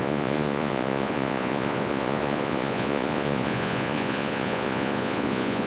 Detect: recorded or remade remade